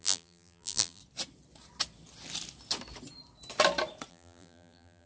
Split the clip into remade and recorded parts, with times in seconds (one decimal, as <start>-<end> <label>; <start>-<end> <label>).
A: 0.0-1.0 remade; 1.0-4.1 recorded; 4.1-5.1 remade